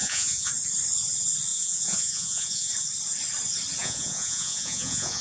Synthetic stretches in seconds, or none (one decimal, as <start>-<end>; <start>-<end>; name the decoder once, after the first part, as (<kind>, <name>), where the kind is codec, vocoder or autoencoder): 0.0-0.5 (vocoder, Vocos); 1.5-2.7; 3.8-5.2